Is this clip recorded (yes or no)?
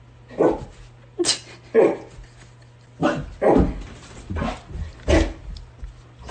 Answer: yes